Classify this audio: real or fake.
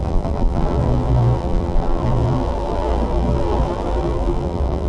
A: fake